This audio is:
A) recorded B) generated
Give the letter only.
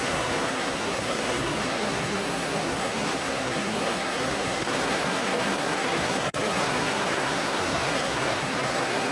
B